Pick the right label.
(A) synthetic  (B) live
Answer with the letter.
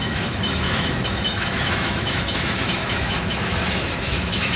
A